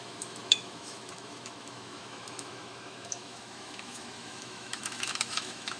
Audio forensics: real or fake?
fake